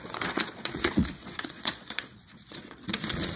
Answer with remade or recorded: remade